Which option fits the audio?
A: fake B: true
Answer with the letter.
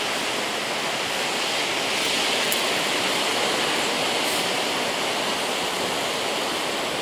B